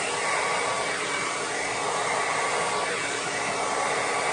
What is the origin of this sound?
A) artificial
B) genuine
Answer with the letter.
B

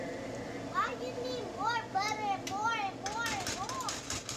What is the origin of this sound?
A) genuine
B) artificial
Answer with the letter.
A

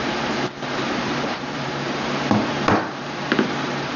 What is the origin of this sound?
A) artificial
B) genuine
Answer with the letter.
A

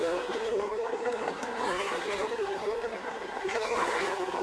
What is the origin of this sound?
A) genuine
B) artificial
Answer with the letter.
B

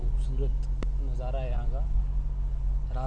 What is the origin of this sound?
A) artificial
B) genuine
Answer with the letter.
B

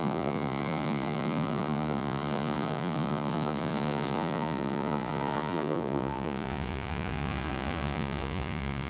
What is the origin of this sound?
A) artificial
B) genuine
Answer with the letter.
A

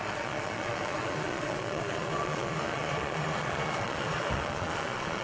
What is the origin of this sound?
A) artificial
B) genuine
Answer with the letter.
A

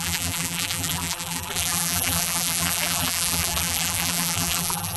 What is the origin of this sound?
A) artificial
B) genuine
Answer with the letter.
A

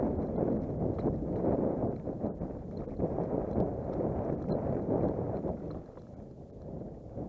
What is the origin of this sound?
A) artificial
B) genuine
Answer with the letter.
A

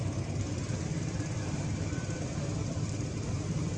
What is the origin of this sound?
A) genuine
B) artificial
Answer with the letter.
A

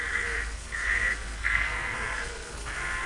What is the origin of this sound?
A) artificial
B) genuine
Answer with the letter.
A